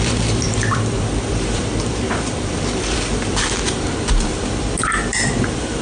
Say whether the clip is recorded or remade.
remade